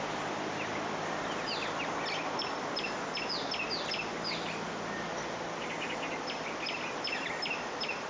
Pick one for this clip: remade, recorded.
recorded